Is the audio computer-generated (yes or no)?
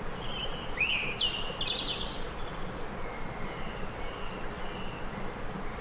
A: no